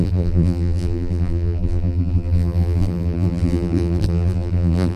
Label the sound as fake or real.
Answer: fake